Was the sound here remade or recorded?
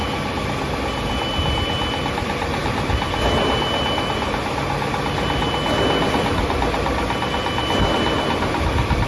recorded